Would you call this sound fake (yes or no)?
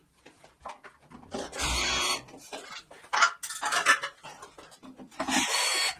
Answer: no